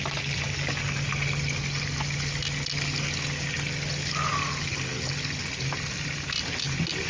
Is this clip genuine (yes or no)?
yes